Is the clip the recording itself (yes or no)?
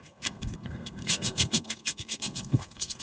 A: no